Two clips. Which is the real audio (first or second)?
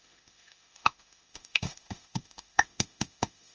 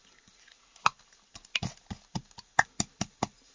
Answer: second